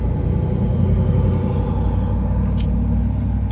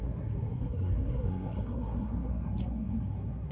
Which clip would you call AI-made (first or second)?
second